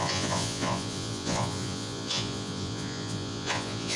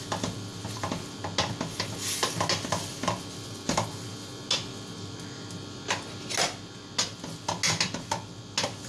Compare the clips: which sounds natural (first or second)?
second